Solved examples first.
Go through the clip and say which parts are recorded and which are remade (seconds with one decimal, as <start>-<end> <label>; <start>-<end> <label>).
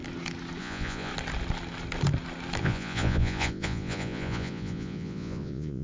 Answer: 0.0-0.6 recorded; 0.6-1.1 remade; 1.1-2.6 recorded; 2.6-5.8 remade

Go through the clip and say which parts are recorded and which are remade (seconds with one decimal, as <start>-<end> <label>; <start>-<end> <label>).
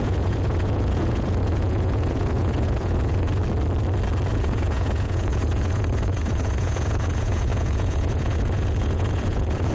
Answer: 0.0-3.4 remade; 3.4-4.3 recorded; 4.3-9.7 remade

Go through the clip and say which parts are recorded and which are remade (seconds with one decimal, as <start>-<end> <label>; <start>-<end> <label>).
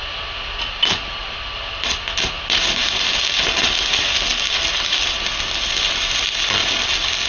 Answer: 0.0-7.3 recorded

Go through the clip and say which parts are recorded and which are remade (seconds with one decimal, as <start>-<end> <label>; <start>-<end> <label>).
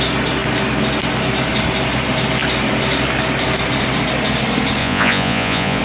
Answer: 0.0-4.8 recorded; 4.8-5.8 remade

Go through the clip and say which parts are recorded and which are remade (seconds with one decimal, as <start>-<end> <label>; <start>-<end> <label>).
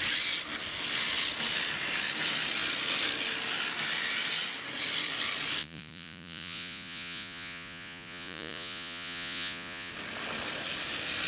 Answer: 0.0-5.6 recorded; 5.6-9.9 remade; 9.9-11.3 recorded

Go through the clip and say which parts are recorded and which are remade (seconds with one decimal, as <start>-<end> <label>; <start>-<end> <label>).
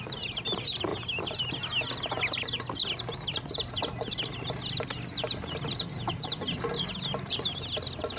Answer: 0.0-8.2 recorded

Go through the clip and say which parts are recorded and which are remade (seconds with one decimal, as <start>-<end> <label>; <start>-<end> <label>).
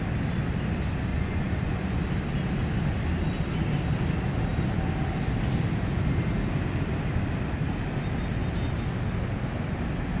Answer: 0.0-1.1 recorded; 1.1-2.0 remade; 2.0-10.2 recorded